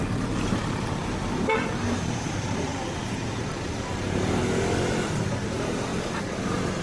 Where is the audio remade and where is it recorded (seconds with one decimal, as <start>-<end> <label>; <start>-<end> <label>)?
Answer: 0.0-4.4 remade; 4.4-5.1 recorded; 5.1-6.8 remade